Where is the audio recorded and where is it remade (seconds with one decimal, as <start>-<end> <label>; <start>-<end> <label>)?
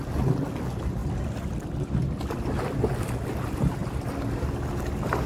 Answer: 0.0-5.3 recorded